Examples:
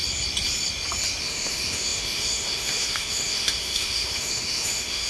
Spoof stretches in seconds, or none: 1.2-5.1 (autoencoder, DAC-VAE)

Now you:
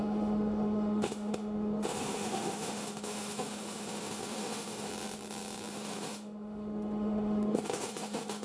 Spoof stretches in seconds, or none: 0.0-4.9 (autoencoder, DAC-VAE); 5.7-8.4

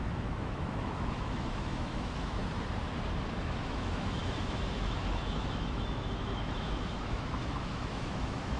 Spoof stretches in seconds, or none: 0.0-2.4 (autoencoder, DAC-VAE); 3.3-8.6

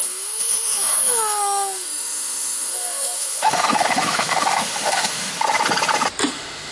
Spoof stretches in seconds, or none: 0.0-5.3 (autoencoder, DAC-VAE); 6.3-6.7

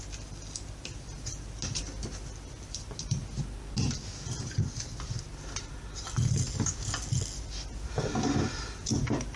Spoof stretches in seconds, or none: none

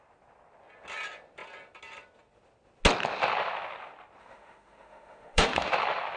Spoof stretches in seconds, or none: 4.2-5.7 (autoencoder, DAC-VAE)